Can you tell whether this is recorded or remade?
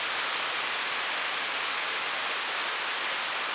recorded